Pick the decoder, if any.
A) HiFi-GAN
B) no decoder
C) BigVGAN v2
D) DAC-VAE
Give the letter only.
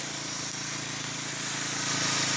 B